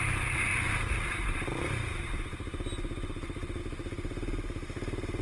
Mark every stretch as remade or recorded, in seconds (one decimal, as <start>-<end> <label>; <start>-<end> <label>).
0.0-0.5 recorded; 0.5-3.6 remade; 3.6-5.2 recorded